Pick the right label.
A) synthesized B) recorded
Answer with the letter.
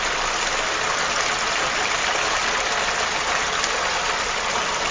B